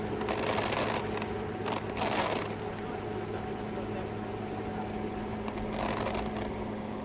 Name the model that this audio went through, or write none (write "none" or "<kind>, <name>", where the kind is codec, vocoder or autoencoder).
none